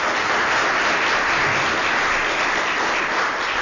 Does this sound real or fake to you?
real